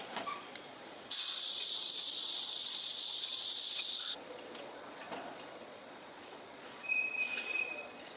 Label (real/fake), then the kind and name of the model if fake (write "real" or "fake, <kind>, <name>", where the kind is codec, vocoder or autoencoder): fake, vocoder, Vocos